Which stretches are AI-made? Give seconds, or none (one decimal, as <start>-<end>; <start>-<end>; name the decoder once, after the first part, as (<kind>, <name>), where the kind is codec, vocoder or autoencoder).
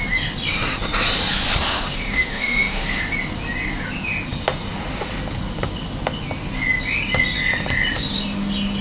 1.7-3.0 (autoencoder, DAC-VAE)